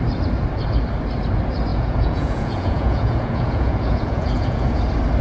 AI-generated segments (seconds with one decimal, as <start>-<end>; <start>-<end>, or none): 1.7-4.8